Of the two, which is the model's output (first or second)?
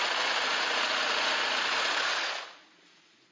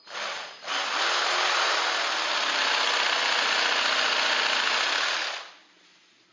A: first